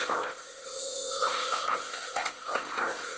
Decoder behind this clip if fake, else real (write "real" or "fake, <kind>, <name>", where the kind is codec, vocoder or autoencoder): fake, codec, ZipCodec